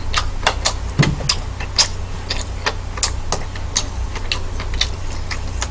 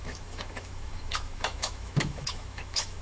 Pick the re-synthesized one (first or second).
second